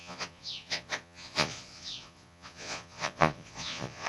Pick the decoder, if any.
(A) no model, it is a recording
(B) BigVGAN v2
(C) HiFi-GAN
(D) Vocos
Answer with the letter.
D